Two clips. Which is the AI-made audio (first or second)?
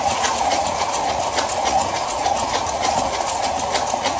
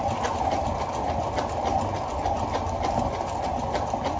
first